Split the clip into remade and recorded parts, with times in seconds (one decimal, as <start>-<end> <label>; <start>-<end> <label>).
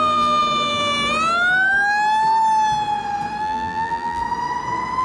0.0-0.4 remade; 0.4-3.4 recorded; 3.4-4.2 remade; 4.2-5.0 recorded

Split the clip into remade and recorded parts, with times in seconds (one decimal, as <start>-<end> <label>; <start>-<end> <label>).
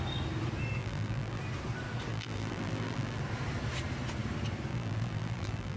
0.0-0.8 recorded; 0.8-1.4 remade; 1.4-2.1 recorded; 2.1-3.2 remade; 3.2-4.7 recorded; 4.7-5.8 remade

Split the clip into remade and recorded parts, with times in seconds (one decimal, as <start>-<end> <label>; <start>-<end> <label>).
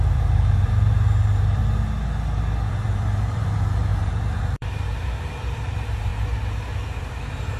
0.0-1.6 remade; 1.6-2.7 recorded; 2.7-6.1 remade; 6.1-7.0 recorded; 7.0-7.6 remade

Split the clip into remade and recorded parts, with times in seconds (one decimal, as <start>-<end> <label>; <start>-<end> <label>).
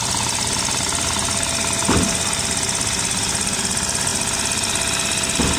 0.0-5.6 recorded